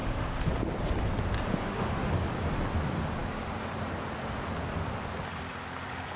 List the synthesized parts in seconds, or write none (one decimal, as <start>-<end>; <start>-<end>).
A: 0.0-0.5; 1.5-2.1